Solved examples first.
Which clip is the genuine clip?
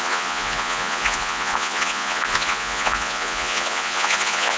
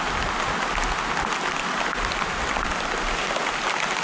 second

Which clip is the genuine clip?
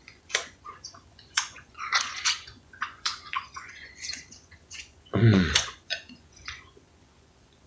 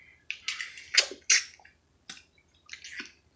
second